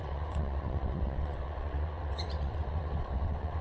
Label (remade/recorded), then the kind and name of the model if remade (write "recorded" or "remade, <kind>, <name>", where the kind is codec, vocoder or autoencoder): remade, vocoder, WaveNeXt